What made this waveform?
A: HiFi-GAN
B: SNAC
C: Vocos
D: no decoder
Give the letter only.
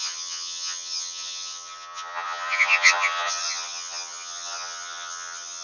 A